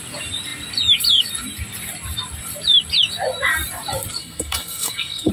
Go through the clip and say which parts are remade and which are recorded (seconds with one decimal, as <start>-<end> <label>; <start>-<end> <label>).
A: 0.0-4.2 recorded; 4.2-5.3 remade